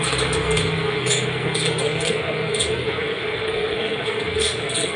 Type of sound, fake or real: fake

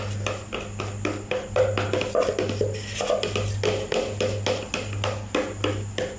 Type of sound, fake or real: real